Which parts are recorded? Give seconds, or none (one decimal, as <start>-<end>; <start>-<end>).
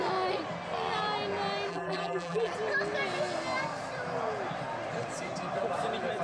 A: 0.0-1.7; 2.5-6.2